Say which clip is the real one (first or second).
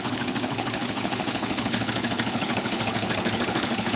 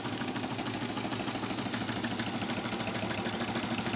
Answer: second